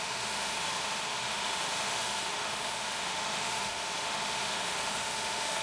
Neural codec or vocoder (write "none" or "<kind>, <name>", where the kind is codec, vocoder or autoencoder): autoencoder, DAC-VAE